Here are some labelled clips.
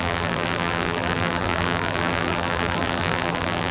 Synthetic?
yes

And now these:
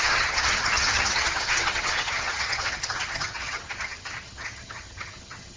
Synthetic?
yes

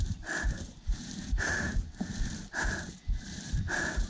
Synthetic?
yes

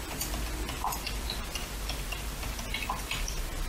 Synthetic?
no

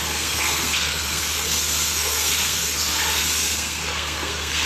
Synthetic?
yes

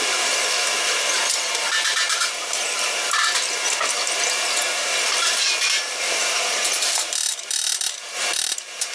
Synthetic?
yes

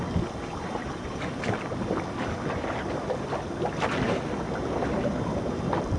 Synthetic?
no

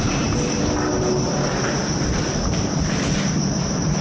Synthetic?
no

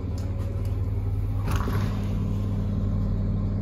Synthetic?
no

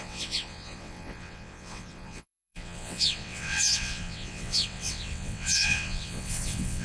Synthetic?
yes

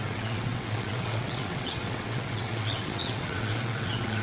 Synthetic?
yes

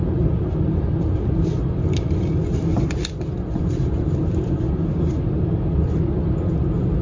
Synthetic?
no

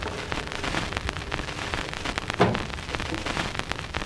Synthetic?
no